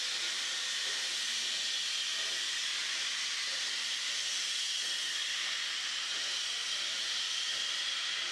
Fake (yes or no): no